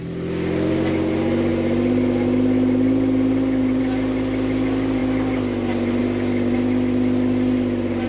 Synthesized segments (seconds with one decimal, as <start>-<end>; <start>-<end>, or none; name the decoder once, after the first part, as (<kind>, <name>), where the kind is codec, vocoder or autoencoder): none

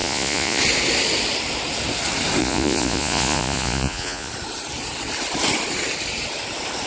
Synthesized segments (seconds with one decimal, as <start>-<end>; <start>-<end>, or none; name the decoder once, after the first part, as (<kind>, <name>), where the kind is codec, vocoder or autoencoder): 0.0-0.6 (vocoder, Vocos); 2.4-4.3

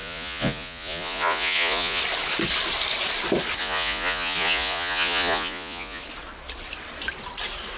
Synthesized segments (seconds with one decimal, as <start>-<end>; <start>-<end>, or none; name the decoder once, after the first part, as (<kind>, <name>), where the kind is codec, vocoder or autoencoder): 0.0-2.0 (vocoder, Vocos); 3.6-6.0

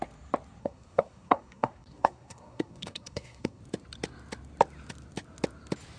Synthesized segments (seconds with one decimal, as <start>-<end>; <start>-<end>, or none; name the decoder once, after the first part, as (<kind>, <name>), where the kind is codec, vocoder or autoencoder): 0.6-3.6 (codec, SNAC)

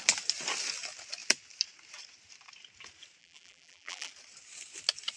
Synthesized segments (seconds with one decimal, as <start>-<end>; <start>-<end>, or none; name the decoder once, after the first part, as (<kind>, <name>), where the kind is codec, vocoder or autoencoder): 3.2-4.1 (vocoder, BigVGAN v2)

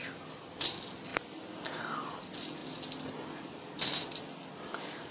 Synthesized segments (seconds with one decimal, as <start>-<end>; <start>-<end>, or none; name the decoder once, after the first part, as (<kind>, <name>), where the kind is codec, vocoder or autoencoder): 0.0-5.1 (vocoder, BigVGAN v2)